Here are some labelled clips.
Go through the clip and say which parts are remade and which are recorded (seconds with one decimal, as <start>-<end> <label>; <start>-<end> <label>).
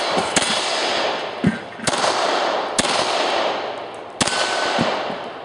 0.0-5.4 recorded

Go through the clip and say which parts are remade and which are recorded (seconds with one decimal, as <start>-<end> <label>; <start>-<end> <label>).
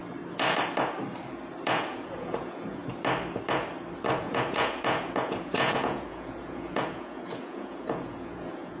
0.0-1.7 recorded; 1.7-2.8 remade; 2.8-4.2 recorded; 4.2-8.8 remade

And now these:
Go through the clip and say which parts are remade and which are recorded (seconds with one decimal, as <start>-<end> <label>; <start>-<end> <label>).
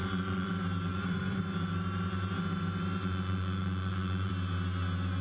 0.0-0.5 remade; 0.5-0.9 recorded; 0.9-1.4 remade; 1.4-3.0 recorded; 3.0-4.3 remade; 4.3-5.2 recorded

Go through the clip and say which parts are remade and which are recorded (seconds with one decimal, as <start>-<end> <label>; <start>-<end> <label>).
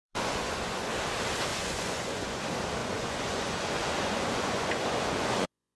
0.0-0.9 remade; 0.9-1.5 recorded; 1.5-2.4 remade; 2.4-2.8 recorded; 2.8-5.8 remade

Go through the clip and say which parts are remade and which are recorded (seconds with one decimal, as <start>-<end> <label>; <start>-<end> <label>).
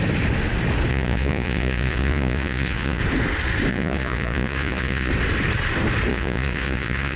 0.0-0.9 recorded; 0.9-3.0 remade; 3.0-3.7 recorded; 3.7-5.1 remade; 5.1-6.1 recorded; 6.1-7.2 remade